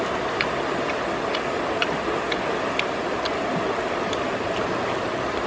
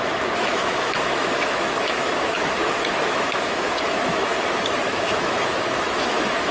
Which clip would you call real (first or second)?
first